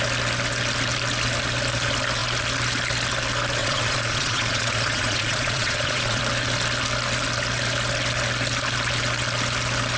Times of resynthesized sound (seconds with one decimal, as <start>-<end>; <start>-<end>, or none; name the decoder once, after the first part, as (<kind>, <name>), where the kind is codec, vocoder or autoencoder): 3.6-6.2 (vocoder, Vocos)